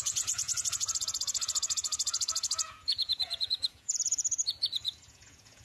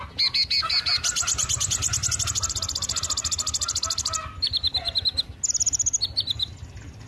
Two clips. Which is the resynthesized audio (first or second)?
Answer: first